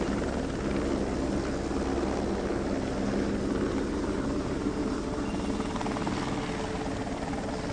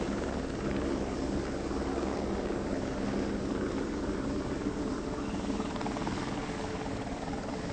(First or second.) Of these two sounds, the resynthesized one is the second